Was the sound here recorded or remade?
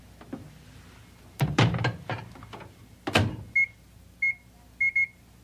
recorded